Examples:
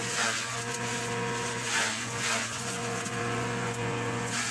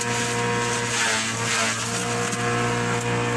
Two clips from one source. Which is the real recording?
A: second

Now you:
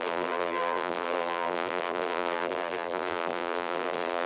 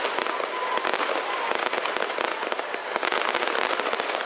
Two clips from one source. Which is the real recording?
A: second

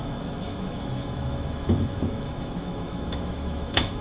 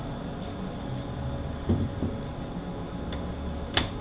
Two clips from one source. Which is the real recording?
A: second